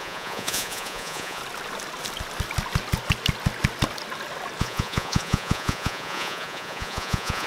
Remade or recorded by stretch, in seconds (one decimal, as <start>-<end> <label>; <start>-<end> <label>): 0.0-1.4 remade; 1.4-4.6 recorded; 4.6-7.5 remade